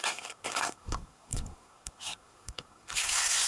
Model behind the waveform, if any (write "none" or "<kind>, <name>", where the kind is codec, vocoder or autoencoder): codec, SNAC